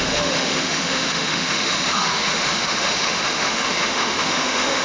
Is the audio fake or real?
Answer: fake